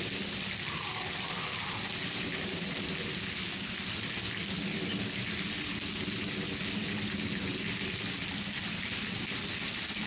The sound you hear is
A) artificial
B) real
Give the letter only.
B